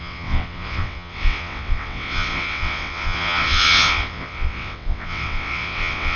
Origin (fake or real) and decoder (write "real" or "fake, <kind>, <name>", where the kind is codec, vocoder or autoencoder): fake, vocoder, WaveNeXt